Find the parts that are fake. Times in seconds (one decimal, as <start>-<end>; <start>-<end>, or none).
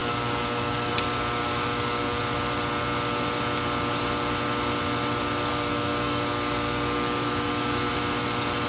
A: 0.0-0.9; 1.4-2.2; 5.5-7.9